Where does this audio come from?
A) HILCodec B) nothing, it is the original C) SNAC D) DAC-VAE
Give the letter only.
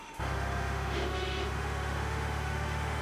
D